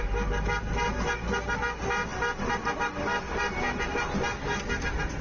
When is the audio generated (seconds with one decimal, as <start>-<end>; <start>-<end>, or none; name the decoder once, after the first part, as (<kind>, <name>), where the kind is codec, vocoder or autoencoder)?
none